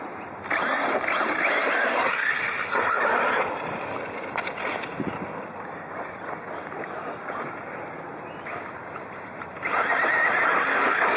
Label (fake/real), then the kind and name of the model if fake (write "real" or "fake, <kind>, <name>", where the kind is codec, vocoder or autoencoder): fake, vocoder, BigVGAN v2